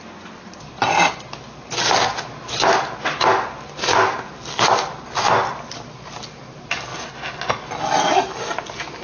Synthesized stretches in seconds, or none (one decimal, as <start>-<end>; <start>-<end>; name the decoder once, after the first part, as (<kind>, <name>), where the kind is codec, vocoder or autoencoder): none